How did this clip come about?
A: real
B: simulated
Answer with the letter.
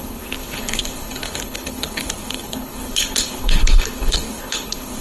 B